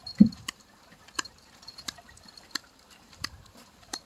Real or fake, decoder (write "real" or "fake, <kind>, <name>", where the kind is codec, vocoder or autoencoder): fake, vocoder, BigVGAN v2